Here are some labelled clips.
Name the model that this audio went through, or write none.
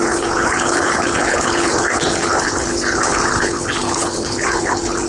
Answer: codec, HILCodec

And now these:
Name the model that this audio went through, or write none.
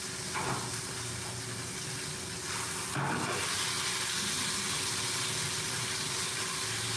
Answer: none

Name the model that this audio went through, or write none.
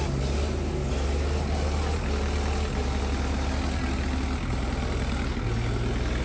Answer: none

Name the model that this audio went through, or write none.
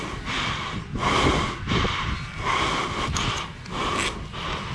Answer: none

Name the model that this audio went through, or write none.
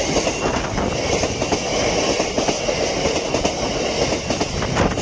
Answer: none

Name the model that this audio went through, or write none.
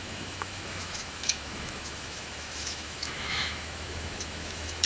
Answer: autoencoder, DAC-VAE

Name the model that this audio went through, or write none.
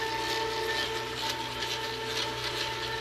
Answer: none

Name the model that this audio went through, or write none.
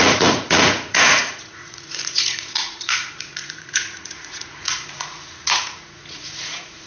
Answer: vocoder, Vocos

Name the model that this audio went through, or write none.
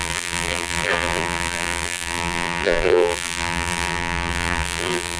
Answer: vocoder, BigVGAN v2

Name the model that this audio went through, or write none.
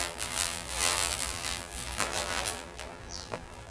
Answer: vocoder, BigVGAN v2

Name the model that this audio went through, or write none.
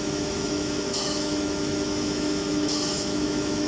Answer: autoencoder, DAC-VAE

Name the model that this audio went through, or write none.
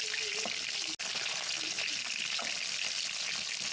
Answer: none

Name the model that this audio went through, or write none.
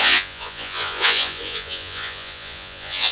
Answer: vocoder, Vocos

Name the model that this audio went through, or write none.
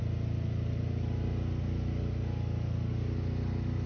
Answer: none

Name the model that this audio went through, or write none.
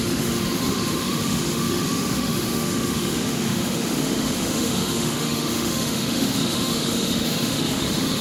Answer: autoencoder, DAC-VAE